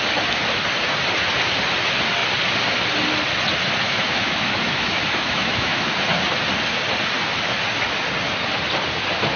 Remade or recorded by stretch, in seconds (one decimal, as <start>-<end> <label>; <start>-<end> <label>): 0.0-3.8 recorded; 3.8-5.9 remade; 5.9-9.4 recorded